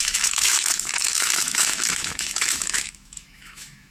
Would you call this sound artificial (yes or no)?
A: yes